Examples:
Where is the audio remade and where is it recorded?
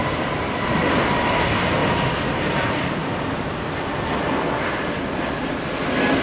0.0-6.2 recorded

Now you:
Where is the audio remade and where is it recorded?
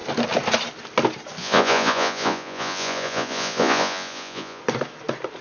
0.0-1.4 recorded; 1.4-4.6 remade; 4.6-5.4 recorded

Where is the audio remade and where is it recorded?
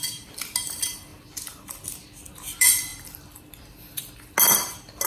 0.0-5.1 recorded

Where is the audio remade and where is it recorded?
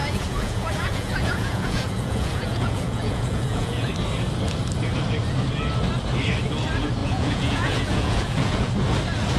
0.0-3.9 remade; 3.9-7.0 recorded; 7.0-8.7 remade; 8.7-9.4 recorded